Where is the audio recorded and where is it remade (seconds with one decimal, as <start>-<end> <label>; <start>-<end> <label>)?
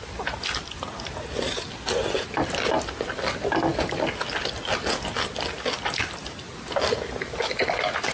0.0-8.1 recorded